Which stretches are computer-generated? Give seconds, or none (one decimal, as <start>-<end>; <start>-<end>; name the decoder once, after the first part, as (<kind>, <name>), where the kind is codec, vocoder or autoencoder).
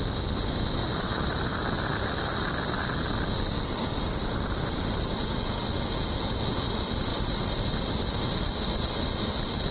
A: none